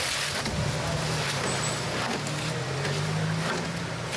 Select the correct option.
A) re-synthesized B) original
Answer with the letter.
B